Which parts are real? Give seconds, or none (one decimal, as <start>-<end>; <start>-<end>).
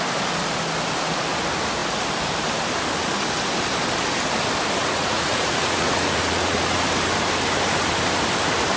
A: 0.0-4.8; 6.8-8.8